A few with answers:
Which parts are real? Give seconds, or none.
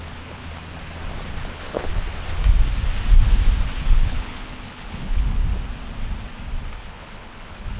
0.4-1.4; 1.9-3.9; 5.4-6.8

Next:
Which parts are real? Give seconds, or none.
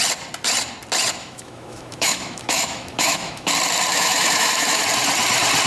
0.0-1.2; 3.5-3.9; 4.8-5.7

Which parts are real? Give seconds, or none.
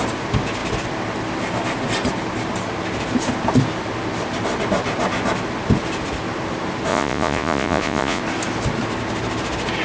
0.0-6.9; 8.2-9.8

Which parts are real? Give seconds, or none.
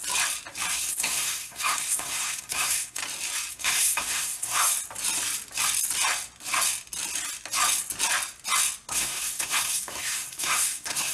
0.0-0.7; 3.0-3.5; 4.7-8.9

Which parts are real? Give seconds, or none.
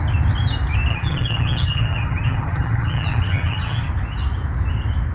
0.0-0.9; 3.9-5.1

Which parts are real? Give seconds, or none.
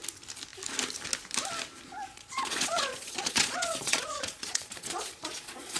0.0-2.1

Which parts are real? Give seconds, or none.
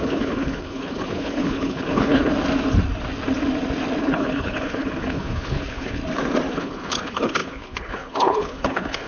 2.3-4.0; 6.0-6.5